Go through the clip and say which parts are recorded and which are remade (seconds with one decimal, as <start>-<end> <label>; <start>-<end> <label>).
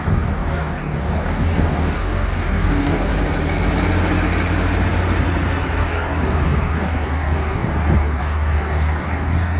0.0-3.1 remade; 3.1-5.8 recorded; 5.8-9.6 remade